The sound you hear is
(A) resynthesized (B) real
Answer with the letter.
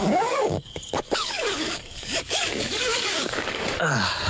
A